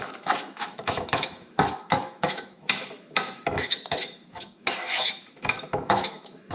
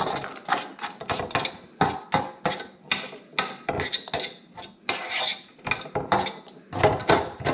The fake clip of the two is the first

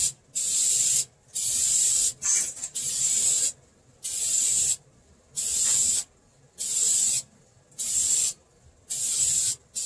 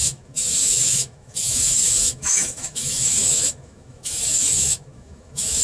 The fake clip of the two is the second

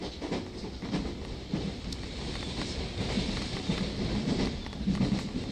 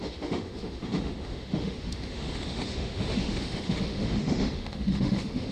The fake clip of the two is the second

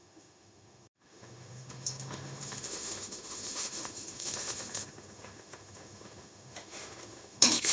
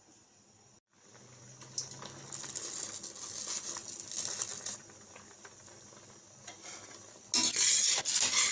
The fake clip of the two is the first